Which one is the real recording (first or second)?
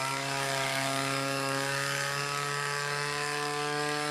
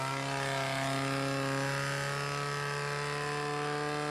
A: second